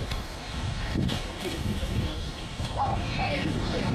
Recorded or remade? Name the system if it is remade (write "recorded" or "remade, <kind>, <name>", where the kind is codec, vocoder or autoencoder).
remade, codec, DAC